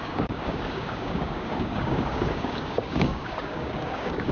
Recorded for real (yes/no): no